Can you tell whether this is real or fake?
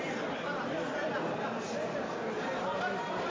real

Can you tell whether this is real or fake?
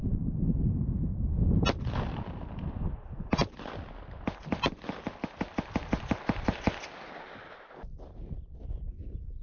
real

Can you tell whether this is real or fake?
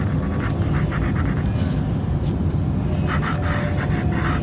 real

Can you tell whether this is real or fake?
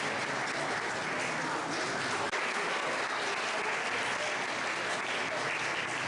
real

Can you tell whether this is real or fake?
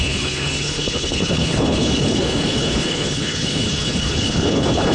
fake